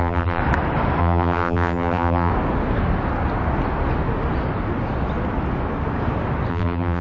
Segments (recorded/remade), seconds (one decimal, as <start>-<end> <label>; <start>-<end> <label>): 0.0-0.4 remade; 0.4-1.0 recorded; 1.0-2.3 remade; 2.3-6.5 recorded; 6.5-7.0 remade